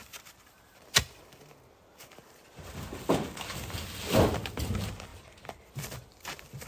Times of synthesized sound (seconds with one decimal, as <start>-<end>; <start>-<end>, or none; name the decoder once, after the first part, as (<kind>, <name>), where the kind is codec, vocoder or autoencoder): 0.0-1.5 (vocoder, BigVGAN v2); 5.1-5.7